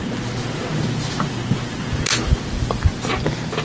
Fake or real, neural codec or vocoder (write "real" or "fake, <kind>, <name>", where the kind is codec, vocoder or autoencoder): real